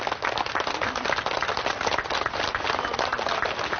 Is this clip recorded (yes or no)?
yes